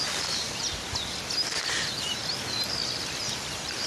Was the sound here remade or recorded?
recorded